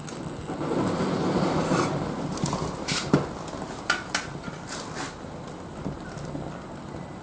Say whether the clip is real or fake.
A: real